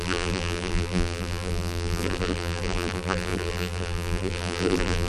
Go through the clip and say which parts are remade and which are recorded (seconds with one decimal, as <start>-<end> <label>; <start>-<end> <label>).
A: 0.0-5.1 remade